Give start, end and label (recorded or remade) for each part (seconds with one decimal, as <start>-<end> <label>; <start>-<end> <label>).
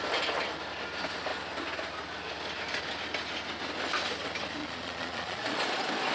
0.0-4.6 recorded; 4.6-5.6 remade; 5.6-6.1 recorded